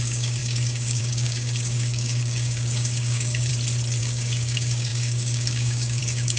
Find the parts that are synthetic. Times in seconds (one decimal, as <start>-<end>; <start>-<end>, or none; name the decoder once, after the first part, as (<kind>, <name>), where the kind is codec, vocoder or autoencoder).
0.0-3.5 (codec, DAC); 4.0-6.4